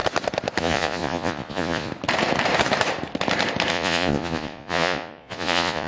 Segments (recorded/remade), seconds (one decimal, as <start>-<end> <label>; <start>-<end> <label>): 0.0-0.6 recorded; 0.6-1.9 remade; 1.9-3.7 recorded; 3.7-5.9 remade